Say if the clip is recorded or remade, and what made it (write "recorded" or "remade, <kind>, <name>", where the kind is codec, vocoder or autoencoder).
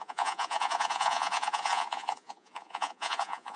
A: remade, vocoder, Vocos